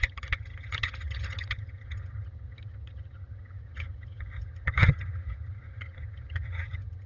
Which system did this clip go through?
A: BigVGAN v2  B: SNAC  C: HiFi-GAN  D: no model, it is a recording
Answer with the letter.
C